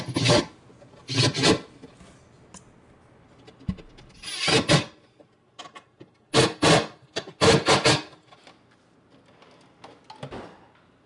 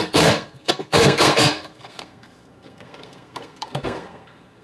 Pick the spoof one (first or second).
second